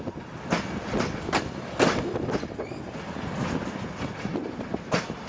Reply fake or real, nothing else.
real